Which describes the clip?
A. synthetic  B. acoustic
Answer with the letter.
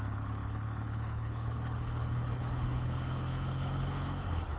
A